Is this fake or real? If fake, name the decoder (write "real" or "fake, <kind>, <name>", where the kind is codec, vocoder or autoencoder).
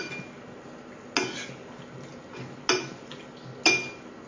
real